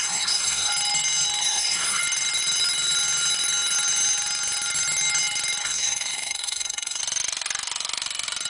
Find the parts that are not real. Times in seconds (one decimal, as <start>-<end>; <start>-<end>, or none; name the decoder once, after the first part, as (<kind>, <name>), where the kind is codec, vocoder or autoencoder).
0.0-0.7 (codec, SNAC); 1.4-2.0; 5.6-7.0